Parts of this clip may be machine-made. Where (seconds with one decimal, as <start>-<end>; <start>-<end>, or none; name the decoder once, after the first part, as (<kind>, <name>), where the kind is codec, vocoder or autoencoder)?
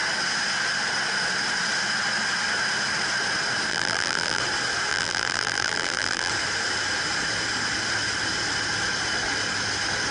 3.7-4.4 (vocoder, BigVGAN v2); 4.9-6.3